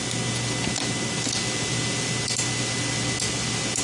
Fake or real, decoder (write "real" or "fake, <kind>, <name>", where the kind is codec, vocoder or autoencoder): real